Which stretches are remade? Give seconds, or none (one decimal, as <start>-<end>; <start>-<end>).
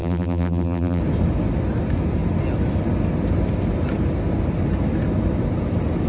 0.0-1.0